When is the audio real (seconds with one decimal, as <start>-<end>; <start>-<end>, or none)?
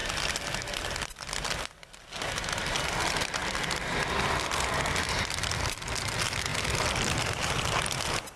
0.0-8.4